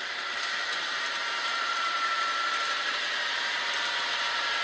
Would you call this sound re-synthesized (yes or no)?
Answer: yes